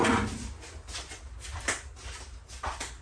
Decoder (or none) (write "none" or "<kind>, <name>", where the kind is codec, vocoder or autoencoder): none